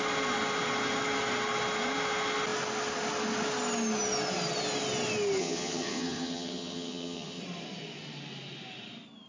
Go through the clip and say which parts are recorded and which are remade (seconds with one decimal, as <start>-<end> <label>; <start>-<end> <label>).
0.0-5.4 recorded; 5.4-7.4 remade; 7.4-9.3 recorded